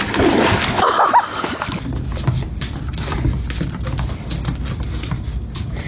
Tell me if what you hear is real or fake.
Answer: real